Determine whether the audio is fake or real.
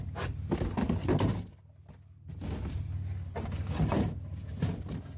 real